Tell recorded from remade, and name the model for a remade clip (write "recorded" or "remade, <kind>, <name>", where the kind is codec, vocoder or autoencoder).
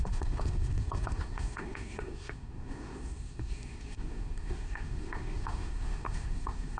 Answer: remade, codec, SNAC